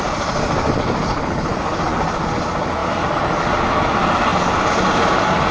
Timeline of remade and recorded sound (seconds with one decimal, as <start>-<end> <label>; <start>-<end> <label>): 0.0-1.0 recorded; 1.0-1.5 remade; 1.5-5.5 recorded